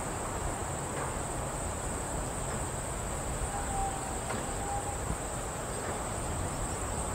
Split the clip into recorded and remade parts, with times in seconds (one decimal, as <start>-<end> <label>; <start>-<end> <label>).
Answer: 0.0-7.1 recorded